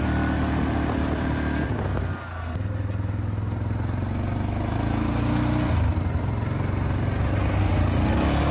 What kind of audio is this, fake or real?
real